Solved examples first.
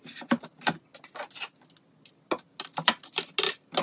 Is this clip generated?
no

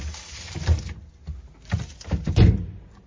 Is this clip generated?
no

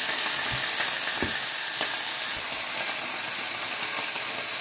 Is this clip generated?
no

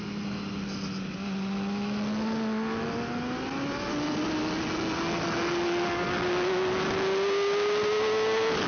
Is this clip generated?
no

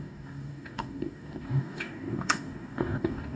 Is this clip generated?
yes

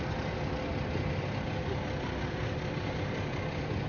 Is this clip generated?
no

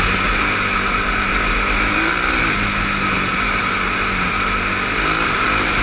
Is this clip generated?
no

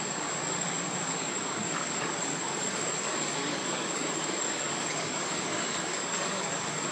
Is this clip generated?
yes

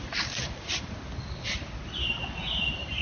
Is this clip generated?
no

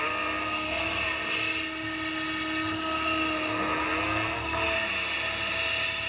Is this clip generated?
no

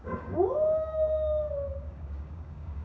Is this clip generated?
yes